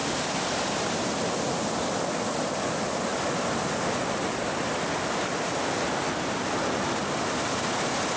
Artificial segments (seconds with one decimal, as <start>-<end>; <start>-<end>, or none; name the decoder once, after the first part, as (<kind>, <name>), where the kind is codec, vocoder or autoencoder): none